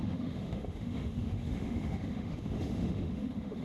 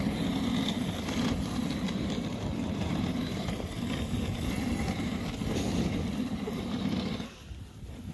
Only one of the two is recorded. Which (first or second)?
second